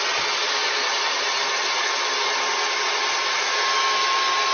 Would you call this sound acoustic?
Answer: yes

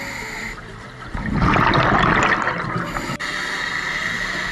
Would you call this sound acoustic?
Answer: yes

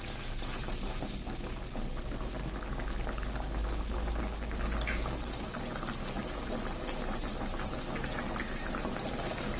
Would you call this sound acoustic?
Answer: yes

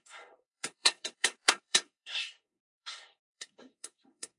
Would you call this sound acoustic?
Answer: no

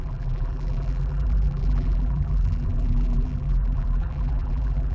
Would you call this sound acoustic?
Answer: no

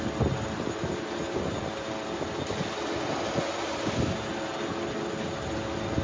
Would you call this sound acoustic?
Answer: yes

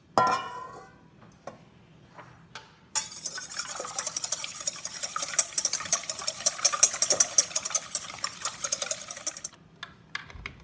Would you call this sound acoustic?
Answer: yes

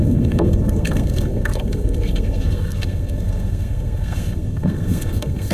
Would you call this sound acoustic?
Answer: no